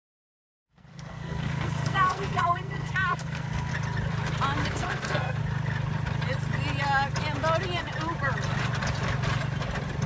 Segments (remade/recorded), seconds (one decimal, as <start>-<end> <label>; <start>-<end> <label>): 0.0-3.7 remade; 3.7-4.7 recorded; 4.7-5.4 remade; 5.4-10.1 recorded